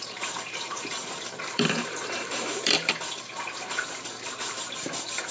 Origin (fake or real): fake